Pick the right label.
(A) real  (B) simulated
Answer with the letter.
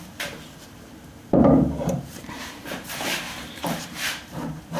B